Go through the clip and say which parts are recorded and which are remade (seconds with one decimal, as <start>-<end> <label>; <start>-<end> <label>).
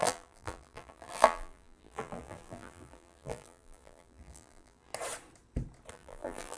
0.0-4.9 remade; 4.9-5.9 recorded; 5.9-6.6 remade